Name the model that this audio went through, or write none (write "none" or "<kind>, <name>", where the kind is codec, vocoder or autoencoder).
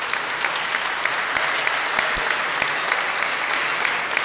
none